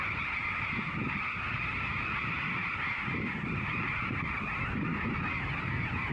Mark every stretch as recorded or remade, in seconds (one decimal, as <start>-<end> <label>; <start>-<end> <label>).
0.0-6.1 recorded